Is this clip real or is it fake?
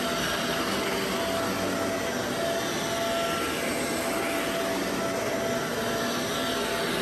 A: real